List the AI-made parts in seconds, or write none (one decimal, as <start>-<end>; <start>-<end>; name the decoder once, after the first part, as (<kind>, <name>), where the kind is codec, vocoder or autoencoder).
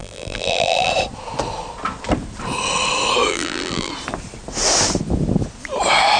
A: 0.0-0.9 (vocoder, BigVGAN v2); 3.3-3.9